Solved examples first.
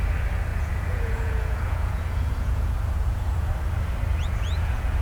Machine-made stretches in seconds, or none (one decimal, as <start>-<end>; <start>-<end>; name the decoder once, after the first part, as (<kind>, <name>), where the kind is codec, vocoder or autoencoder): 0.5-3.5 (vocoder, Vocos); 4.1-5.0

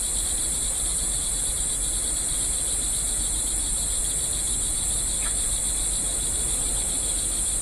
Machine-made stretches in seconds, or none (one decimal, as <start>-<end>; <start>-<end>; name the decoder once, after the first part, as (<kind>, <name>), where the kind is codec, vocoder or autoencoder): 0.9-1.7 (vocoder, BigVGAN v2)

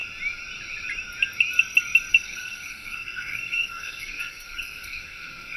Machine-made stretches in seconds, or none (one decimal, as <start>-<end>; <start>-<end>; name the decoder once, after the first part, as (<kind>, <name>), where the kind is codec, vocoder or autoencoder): 2.1-5.6 (codec, SNAC)

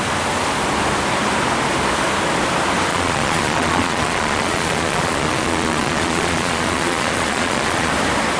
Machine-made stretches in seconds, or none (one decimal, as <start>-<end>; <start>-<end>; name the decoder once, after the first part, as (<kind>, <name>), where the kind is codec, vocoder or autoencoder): 2.9-7.9 (vocoder, Vocos)